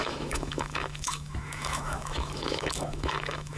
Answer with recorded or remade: remade